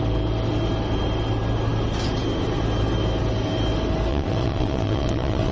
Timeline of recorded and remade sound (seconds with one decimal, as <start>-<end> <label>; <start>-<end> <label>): 0.0-4.1 recorded; 4.1-5.5 remade